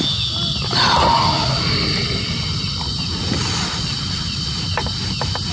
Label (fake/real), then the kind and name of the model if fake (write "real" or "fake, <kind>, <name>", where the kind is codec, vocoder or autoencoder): real